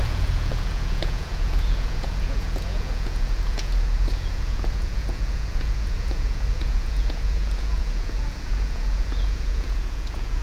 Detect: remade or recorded remade